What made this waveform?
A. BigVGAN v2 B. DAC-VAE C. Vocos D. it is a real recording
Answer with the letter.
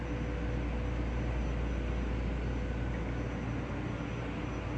D